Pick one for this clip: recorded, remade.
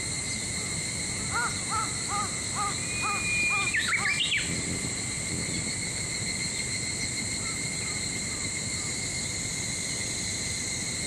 recorded